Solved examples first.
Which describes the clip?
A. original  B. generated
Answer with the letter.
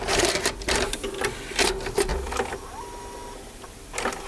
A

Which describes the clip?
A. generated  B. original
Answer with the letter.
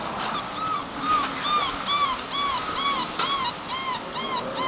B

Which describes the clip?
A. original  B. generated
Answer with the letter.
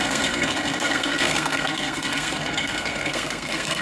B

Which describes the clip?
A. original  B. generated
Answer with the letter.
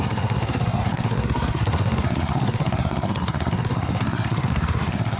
B